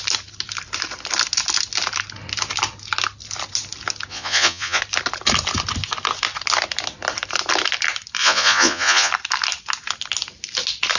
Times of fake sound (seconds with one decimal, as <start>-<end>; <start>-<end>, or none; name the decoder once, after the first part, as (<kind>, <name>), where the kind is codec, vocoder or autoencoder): 4.1-4.8 (vocoder, Vocos); 8.2-9.1